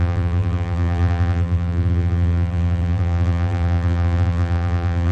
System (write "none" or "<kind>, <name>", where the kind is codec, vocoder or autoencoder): vocoder, BigVGAN v2